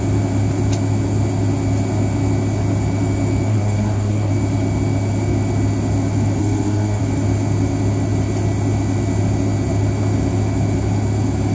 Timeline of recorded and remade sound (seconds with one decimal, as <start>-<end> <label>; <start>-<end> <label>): 0.0-3.5 recorded; 3.5-4.3 remade; 4.3-6.4 recorded; 6.4-7.0 remade; 7.0-11.5 recorded